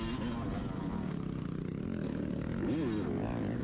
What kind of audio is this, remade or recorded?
recorded